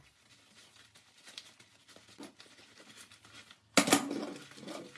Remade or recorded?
recorded